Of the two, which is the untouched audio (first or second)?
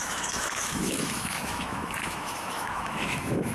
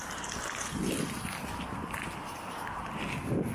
second